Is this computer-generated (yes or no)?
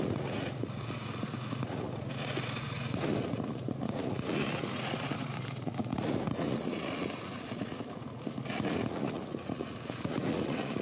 yes